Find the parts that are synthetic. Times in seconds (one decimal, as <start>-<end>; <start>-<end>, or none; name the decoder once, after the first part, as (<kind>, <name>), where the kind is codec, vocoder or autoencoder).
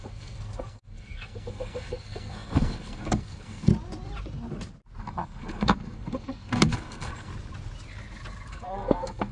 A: 0.0-3.7 (codec, SNAC); 5.0-7.3; 8.5-9.3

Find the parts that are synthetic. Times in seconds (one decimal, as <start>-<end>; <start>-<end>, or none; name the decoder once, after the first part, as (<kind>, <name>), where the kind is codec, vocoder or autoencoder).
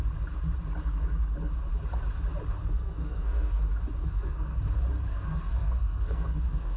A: 2.7-3.6 (codec, SNAC); 4.0-4.6; 5.1-6.8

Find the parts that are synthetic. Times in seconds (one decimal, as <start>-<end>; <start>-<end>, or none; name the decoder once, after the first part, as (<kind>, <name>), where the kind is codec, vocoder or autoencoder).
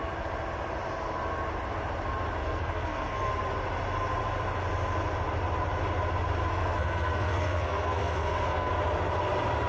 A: 2.4-3.3 (codec, SNAC); 6.5-8.7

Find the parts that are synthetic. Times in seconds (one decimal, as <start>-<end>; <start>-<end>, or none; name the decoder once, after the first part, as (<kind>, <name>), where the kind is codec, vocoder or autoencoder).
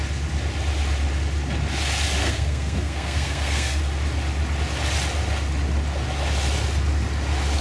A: 2.2-3.8 (codec, SNAC)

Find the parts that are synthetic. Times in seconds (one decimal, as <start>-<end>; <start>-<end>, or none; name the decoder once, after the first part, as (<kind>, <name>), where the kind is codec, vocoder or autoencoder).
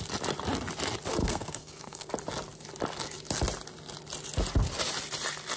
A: 1.2-2.1 (codec, SNAC)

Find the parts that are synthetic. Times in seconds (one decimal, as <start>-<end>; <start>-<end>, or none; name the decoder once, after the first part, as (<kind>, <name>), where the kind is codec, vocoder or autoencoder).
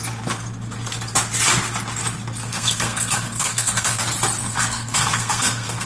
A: 2.4-4.0 (codec, SNAC); 4.4-5.9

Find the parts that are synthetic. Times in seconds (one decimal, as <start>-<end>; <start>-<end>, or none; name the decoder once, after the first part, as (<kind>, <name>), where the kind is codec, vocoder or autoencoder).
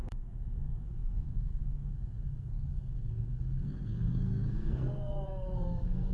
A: 0.0-6.1 (codec, SNAC)